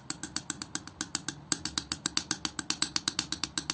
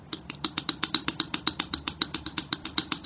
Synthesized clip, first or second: second